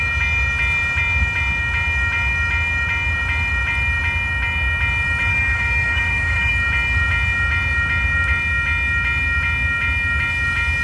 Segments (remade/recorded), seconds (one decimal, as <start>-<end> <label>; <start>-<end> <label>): 0.0-5.3 recorded; 5.3-6.5 remade; 6.5-10.8 recorded